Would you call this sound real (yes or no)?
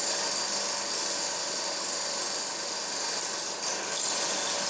yes